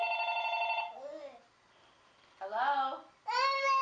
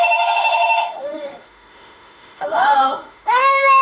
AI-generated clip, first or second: second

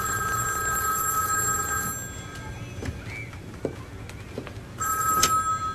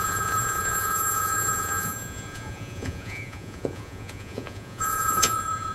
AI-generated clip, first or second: second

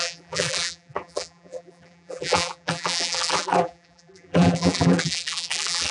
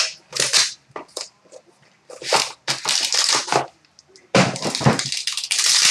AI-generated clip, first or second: first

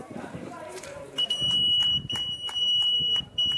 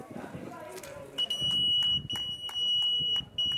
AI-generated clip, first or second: first